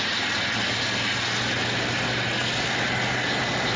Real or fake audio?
real